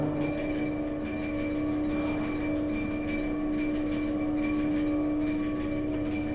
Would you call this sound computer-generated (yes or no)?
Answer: no